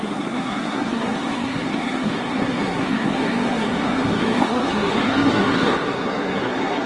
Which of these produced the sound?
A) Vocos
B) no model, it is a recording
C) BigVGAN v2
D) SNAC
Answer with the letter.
D